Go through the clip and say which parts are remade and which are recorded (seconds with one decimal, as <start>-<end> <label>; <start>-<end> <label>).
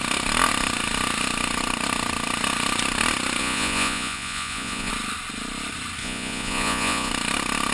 0.0-3.4 recorded; 3.4-4.9 remade; 4.9-6.0 recorded; 6.0-7.1 remade; 7.1-7.7 recorded